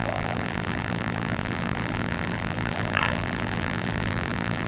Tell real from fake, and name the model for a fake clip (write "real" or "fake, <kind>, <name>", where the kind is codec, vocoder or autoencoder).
fake, vocoder, BigVGAN v2